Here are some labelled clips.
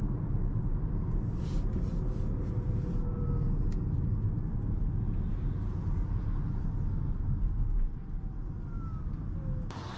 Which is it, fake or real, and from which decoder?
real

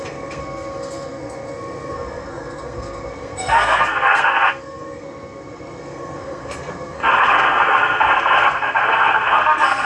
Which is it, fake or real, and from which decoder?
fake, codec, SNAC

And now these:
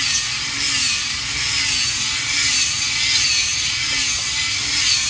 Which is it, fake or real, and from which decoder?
real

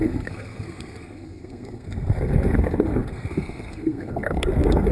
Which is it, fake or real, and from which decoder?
fake, codec, SNAC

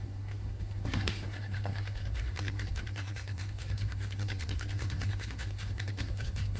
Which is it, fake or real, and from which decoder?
fake, codec, SNAC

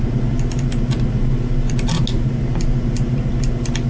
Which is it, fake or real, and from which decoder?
real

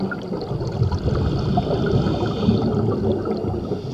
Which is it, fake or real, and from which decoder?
real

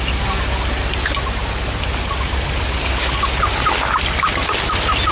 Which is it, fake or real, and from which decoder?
real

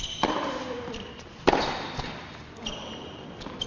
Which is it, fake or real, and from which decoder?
fake, vocoder, BigVGAN v2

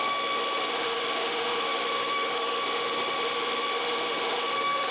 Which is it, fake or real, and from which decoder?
fake, autoencoder, DAC-VAE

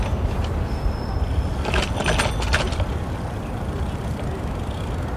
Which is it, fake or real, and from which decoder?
real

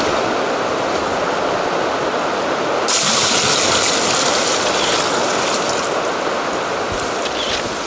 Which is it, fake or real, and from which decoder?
real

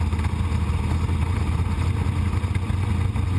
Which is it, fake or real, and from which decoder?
real